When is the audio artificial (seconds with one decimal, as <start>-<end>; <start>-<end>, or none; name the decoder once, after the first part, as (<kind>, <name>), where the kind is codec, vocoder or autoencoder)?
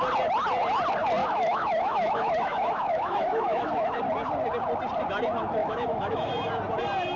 1.2-4.0 (autoencoder, DAC-VAE); 5.6-6.3